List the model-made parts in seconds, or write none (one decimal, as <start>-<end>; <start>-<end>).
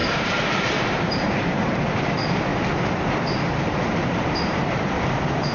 0.0-2.5; 3.2-5.5